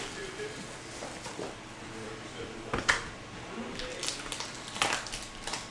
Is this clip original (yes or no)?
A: yes